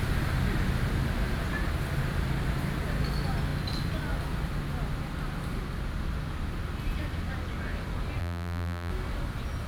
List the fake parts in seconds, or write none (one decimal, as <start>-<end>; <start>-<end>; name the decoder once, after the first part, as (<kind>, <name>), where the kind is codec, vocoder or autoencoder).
8.2-8.9 (vocoder, BigVGAN v2)